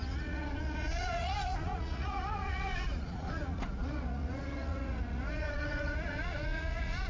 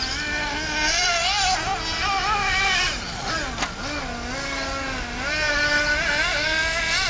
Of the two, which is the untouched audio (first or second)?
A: second